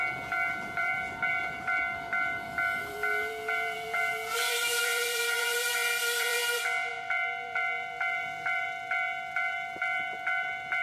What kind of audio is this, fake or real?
fake